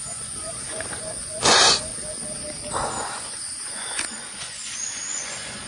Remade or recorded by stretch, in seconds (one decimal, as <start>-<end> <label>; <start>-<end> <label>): 0.0-1.9 remade; 1.9-3.0 recorded; 3.0-5.7 remade